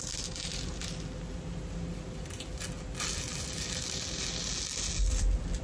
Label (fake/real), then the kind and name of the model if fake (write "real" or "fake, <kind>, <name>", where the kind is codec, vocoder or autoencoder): real